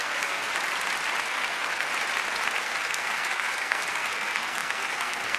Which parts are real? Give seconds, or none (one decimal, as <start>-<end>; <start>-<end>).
0.5-1.2; 1.9-2.6